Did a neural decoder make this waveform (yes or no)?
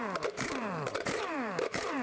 yes